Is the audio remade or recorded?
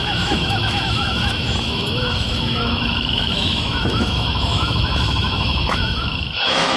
remade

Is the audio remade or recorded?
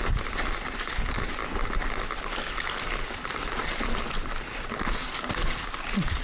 recorded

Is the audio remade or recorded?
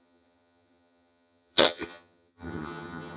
remade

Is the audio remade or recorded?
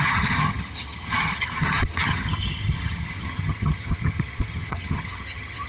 remade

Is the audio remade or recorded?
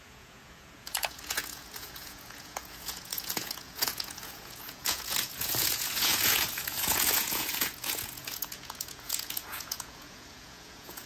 remade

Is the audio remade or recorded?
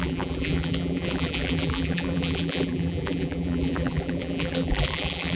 remade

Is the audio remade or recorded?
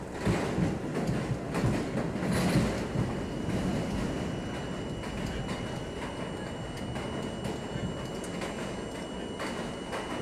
recorded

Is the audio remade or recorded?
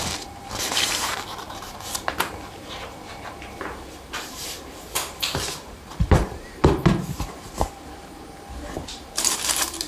remade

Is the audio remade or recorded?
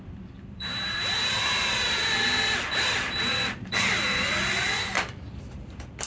remade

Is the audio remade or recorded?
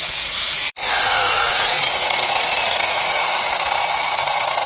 remade